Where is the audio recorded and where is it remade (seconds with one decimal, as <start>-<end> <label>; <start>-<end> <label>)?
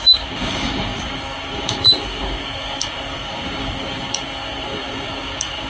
0.0-5.7 remade